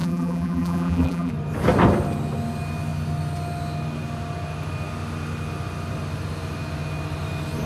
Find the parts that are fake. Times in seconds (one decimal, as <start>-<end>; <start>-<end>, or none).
0.0-1.3